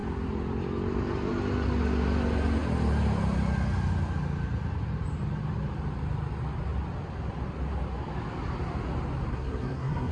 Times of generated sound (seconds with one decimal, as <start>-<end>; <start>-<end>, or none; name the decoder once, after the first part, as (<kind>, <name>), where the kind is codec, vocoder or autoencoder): 9.3-10.1 (codec, SNAC)